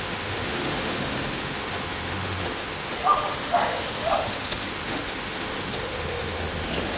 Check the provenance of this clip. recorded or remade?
remade